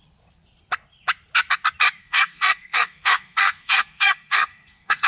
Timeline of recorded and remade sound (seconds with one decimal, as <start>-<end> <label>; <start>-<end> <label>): 0.0-2.0 recorded; 2.0-5.1 remade